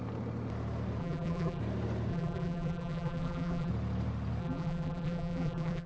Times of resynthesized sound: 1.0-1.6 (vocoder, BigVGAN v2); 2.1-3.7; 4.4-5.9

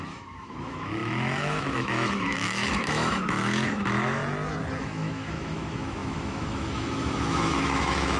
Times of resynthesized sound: 0.0-4.2 (autoencoder, DAC-VAE); 4.8-8.2

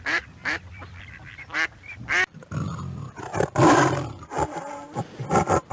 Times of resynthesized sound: 0.4-3.8 (vocoder, BigVGAN v2); 5.0-5.7

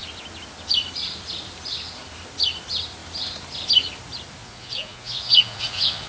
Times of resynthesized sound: 4.4-6.1 (vocoder, Vocos)

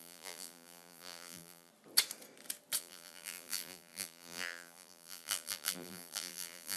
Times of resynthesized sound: 0.0-1.7 (vocoder, BigVGAN v2); 2.8-6.8

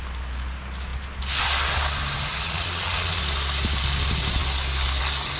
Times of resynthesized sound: 2.3-3.2 (vocoder, Vocos)